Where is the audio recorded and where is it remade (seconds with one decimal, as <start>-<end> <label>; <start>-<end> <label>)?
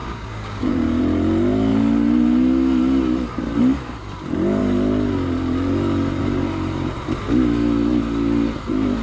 0.0-1.0 remade; 1.0-9.0 recorded